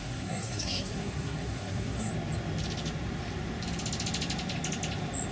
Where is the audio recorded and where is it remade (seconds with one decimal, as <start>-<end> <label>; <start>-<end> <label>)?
0.0-2.1 remade; 2.1-5.3 recorded